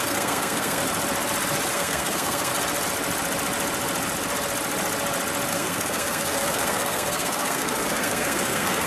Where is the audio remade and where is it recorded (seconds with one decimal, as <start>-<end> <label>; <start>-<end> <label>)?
0.0-0.8 remade; 0.8-1.7 recorded; 1.7-2.5 remade; 2.5-5.5 recorded; 5.5-8.9 remade